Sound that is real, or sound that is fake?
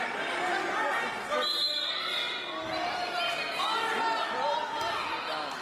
real